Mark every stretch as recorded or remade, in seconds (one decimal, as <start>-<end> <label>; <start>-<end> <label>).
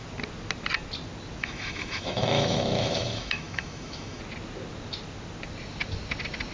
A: 0.0-1.4 recorded; 1.4-4.2 remade; 4.2-6.5 recorded